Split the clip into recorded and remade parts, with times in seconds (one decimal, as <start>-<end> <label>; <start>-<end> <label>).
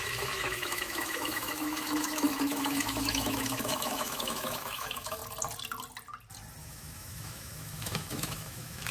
0.0-5.2 remade; 5.2-6.6 recorded; 6.6-8.9 remade